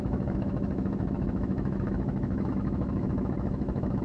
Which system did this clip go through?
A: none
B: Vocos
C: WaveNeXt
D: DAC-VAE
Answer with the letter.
D